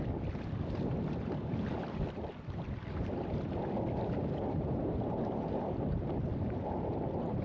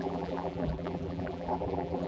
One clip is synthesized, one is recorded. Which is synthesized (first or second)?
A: second